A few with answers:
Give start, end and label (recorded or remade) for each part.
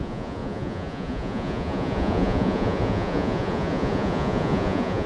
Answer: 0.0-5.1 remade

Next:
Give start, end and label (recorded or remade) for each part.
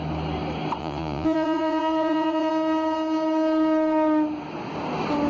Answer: 0.0-0.8 recorded; 0.8-2.5 remade; 2.5-5.3 recorded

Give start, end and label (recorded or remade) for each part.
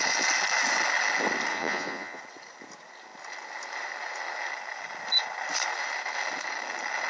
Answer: 0.0-1.5 recorded; 1.5-2.2 remade; 2.2-7.1 recorded